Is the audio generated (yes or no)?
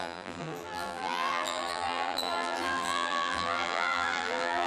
yes